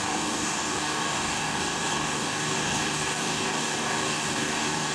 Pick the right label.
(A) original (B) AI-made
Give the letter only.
B